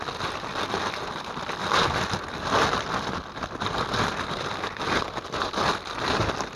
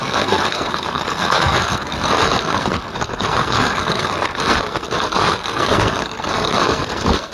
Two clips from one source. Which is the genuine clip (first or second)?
first